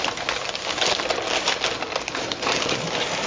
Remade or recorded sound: recorded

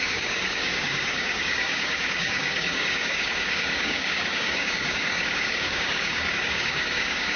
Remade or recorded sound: remade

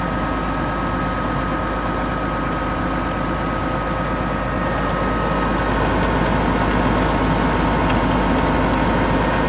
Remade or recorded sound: recorded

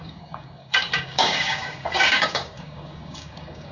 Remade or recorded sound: remade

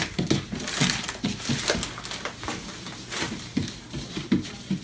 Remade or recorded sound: recorded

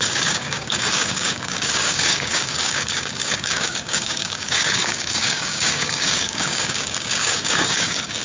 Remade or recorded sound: remade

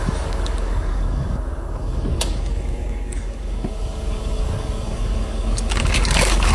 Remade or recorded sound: remade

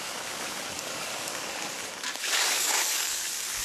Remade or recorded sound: remade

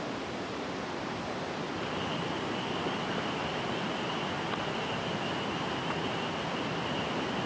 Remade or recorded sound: recorded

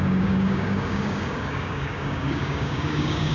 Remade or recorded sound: remade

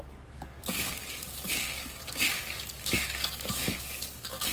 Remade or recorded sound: remade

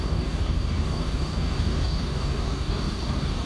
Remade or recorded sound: remade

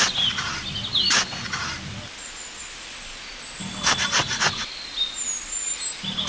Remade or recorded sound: recorded